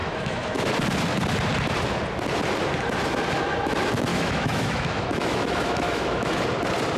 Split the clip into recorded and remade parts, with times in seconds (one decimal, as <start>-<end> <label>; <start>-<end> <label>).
0.0-0.7 remade; 0.7-4.1 recorded; 4.1-6.4 remade; 6.4-7.0 recorded